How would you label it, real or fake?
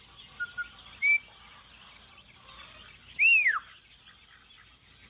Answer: real